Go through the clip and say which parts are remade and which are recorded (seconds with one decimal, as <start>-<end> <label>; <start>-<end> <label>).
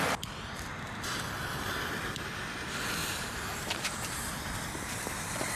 0.0-3.0 recorded; 3.0-4.2 remade; 4.2-5.6 recorded